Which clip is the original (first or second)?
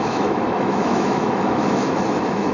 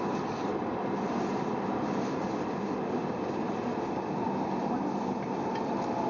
second